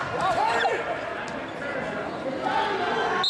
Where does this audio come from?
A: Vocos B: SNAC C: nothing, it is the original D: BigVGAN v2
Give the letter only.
C